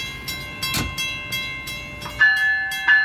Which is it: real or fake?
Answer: real